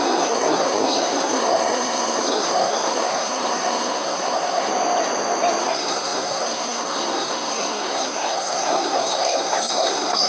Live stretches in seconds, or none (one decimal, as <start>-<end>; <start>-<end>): 4.7-5.6